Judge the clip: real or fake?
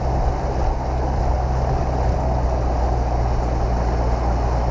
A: real